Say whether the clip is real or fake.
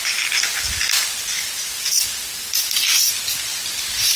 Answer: real